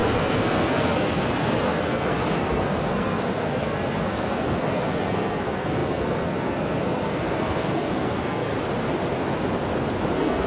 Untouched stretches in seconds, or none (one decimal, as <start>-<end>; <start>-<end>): 8.5-10.0